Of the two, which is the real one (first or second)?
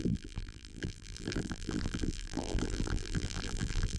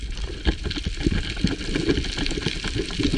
second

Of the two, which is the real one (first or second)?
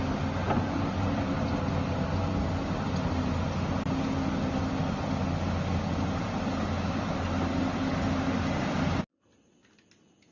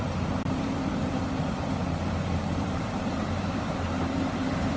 first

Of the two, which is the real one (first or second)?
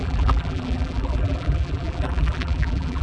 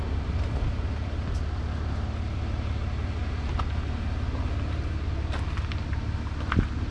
second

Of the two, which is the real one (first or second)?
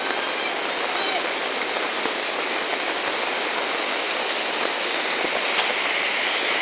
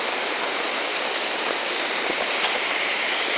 first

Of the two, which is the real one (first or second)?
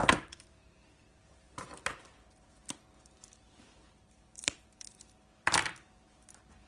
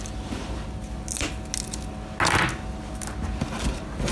second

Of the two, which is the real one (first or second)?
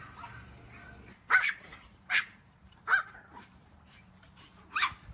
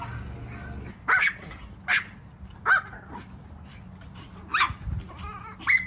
second